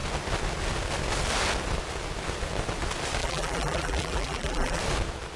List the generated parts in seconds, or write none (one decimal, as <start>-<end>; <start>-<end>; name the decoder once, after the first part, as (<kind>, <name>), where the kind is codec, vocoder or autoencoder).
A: 3.2-4.8 (vocoder, BigVGAN v2)